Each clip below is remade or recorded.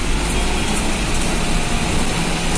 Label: recorded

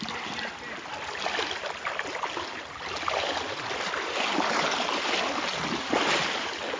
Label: recorded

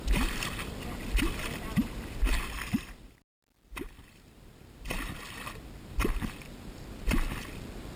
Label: recorded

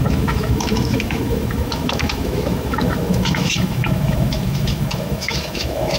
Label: remade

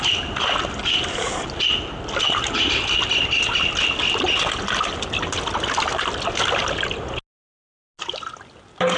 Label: recorded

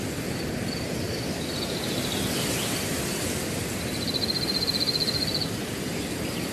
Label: remade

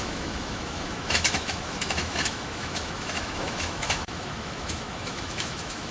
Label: remade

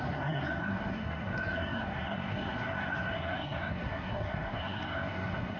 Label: remade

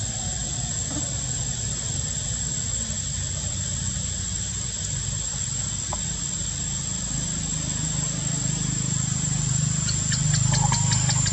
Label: recorded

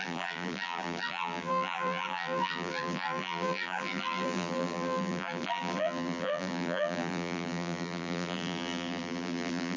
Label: remade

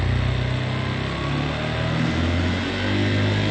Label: recorded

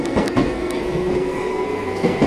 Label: remade